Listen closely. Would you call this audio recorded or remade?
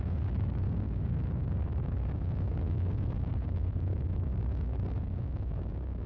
remade